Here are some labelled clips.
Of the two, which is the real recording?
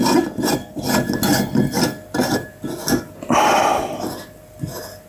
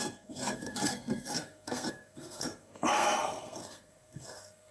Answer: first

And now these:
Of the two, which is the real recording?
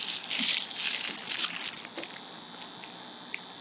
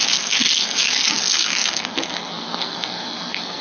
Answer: first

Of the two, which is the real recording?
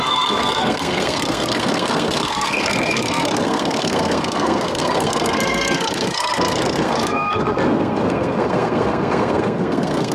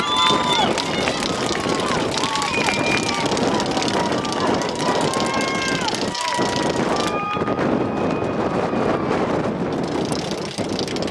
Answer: second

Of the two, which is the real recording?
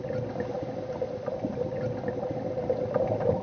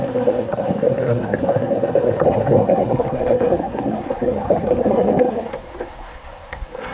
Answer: first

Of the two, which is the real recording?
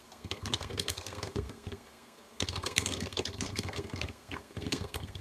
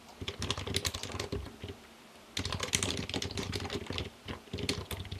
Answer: second